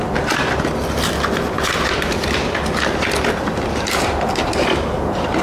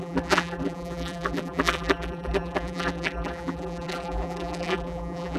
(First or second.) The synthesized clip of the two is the second